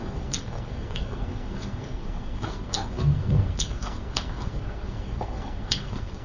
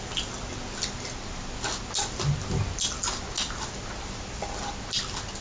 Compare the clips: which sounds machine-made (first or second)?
first